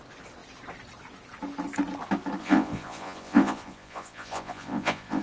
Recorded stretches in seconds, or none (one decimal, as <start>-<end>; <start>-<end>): 0.0-2.4